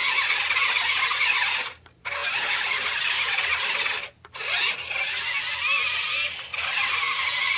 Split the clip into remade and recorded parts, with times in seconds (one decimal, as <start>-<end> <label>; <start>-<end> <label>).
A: 0.0-7.6 recorded